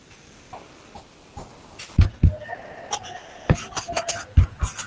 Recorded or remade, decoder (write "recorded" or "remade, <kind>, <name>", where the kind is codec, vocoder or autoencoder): recorded